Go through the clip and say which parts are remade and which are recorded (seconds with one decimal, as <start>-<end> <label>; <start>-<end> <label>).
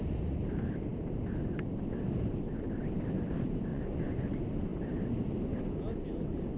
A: 0.0-3.7 recorded; 3.7-4.3 remade; 4.3-6.6 recorded